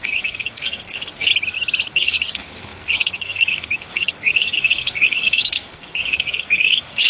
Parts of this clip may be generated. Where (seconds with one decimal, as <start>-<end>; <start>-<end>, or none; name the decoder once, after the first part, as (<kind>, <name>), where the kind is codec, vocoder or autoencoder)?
0.0-1.3 (codec, SNAC); 1.9-7.1